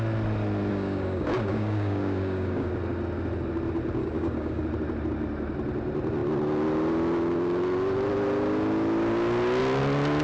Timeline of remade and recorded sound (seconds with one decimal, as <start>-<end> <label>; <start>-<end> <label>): 0.0-0.7 recorded; 0.7-2.7 remade; 2.7-4.0 recorded; 4.0-4.6 remade; 4.6-10.2 recorded